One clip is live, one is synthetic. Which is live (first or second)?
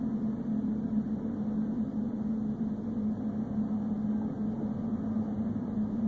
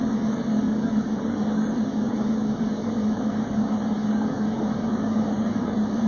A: first